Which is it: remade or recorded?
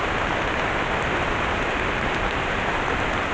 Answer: recorded